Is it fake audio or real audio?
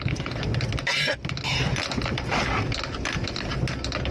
real